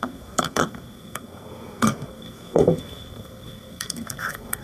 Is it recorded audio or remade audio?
remade